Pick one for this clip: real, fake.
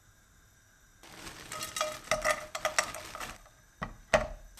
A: real